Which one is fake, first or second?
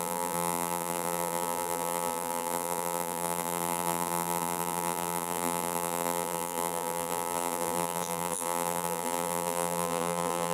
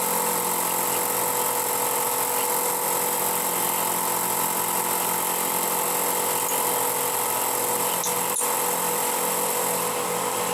first